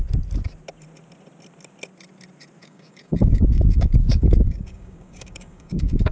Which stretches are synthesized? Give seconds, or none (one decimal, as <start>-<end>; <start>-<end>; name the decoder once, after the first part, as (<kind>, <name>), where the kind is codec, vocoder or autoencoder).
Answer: 2.6-6.1 (codec, DAC)